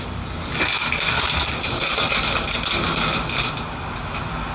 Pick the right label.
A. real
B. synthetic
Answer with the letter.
A